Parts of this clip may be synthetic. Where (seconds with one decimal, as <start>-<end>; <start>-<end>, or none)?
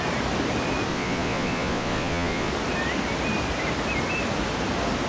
0.9-2.5